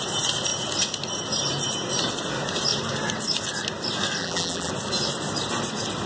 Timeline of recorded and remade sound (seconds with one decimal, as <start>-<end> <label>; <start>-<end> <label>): 0.0-4.2 recorded; 4.2-4.7 remade; 4.7-6.1 recorded